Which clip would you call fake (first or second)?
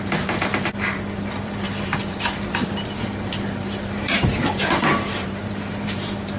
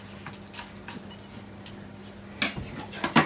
first